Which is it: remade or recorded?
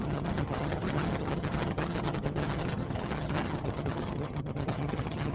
remade